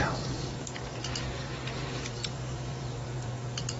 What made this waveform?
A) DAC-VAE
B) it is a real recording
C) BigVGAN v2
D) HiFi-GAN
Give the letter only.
C